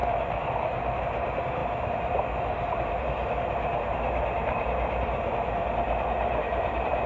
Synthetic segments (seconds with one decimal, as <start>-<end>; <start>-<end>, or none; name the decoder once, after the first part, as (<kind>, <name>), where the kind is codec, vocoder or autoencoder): 0.0-1.0 (autoencoder, DAC-VAE)